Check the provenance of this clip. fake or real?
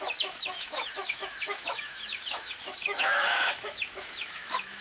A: fake